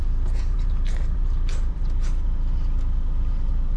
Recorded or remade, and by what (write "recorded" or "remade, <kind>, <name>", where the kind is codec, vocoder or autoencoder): remade, vocoder, BigVGAN v2